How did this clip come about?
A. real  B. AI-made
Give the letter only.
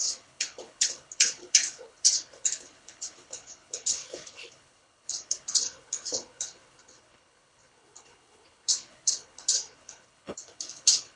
B